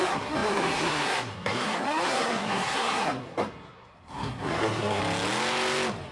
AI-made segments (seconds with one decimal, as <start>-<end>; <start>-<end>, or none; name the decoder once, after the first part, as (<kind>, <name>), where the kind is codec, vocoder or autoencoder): 0.0-5.0 (codec, SNAC)